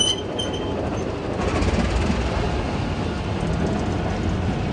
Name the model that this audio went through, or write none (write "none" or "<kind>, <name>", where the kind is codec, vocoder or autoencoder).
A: none